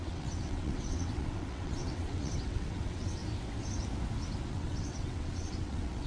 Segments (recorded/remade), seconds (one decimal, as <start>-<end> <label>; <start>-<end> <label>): 0.0-3.2 remade; 3.2-4.5 recorded; 4.5-6.1 remade